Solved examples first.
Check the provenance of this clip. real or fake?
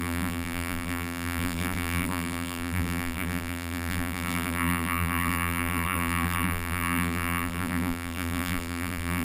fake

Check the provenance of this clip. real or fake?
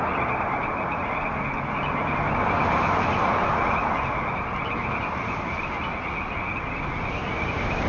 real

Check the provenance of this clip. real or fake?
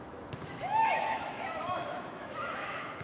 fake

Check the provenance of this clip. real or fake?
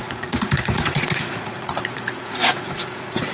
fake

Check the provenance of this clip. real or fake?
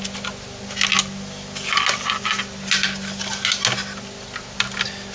real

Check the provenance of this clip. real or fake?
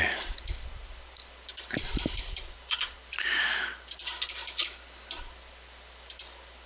real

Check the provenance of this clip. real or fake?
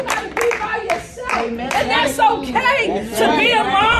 fake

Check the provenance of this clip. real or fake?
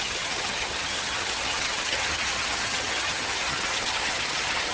fake